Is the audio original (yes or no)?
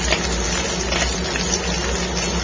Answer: yes